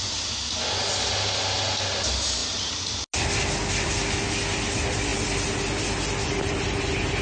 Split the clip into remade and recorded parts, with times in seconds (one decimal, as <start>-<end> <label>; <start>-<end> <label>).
0.0-7.2 recorded